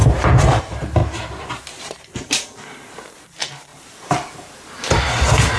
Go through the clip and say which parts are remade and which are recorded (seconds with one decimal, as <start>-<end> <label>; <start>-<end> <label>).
0.0-0.6 remade; 0.6-1.0 recorded; 1.0-1.5 remade; 1.5-3.7 recorded; 3.7-4.5 remade; 4.5-5.6 recorded